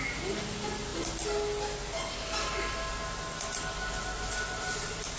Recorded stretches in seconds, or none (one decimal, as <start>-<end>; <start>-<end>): 0.0-5.2